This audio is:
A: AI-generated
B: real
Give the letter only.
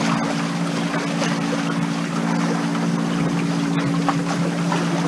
B